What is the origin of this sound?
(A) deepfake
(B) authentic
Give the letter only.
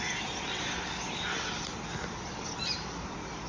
B